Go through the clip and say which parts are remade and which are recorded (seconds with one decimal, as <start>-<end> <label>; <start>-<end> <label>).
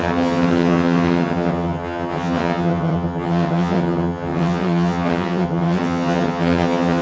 0.0-7.0 remade